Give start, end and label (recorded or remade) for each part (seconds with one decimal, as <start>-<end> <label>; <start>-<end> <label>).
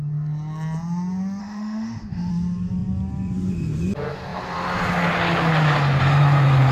0.0-1.4 recorded; 1.4-2.3 remade; 2.3-6.7 recorded